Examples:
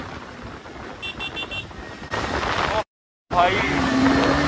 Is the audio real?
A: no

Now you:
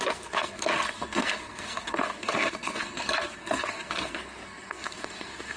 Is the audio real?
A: no